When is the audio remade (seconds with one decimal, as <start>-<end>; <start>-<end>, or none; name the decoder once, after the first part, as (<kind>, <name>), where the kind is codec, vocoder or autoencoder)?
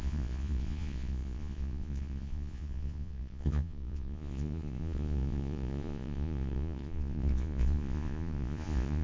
0.0-9.0 (vocoder, Vocos)